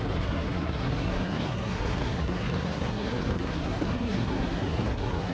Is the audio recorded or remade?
remade